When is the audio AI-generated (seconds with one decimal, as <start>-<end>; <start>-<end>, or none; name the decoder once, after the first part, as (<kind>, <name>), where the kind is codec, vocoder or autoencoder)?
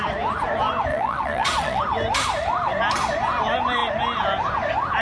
0.9-1.8 (vocoder, Vocos)